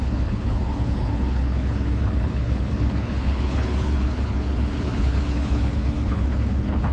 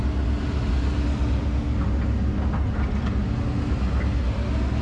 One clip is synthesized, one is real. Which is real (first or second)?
second